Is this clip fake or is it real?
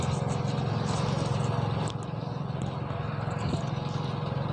real